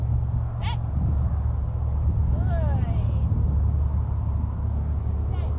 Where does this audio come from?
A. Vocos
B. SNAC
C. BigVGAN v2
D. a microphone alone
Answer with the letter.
D